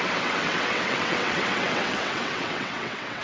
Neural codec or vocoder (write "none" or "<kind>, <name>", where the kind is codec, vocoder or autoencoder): vocoder, WaveNeXt